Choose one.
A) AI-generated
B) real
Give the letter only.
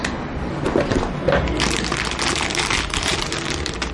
B